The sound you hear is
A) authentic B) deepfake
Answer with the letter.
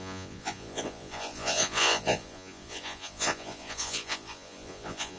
B